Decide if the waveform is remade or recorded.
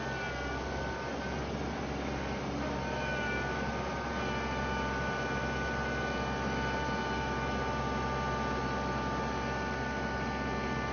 recorded